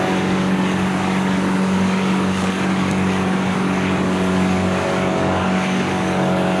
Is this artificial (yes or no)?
yes